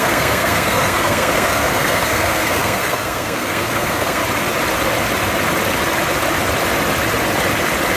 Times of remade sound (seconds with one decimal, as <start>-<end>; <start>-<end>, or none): 0.0-4.2